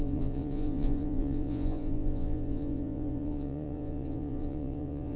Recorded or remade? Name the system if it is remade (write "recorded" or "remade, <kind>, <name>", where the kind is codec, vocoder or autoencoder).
remade, vocoder, Vocos